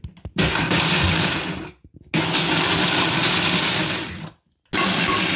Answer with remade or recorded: recorded